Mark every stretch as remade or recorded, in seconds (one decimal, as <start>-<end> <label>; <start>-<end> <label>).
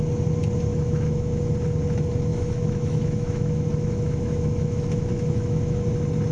0.0-0.7 recorded; 0.7-1.4 remade; 1.4-2.3 recorded; 2.3-5.8 remade; 5.8-6.3 recorded